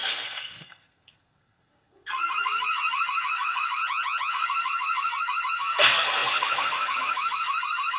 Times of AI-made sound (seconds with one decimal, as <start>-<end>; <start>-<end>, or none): 0.0-3.8; 4.3-8.0